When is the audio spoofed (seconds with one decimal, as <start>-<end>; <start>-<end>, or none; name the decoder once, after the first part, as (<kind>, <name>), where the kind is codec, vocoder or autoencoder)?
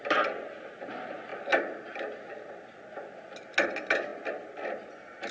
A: none